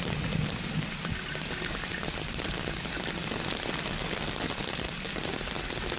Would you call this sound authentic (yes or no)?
yes